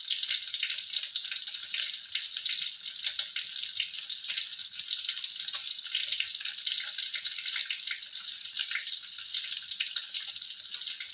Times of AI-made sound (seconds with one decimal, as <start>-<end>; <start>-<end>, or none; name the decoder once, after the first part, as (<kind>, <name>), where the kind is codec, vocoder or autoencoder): none